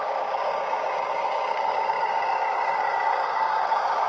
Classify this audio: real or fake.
fake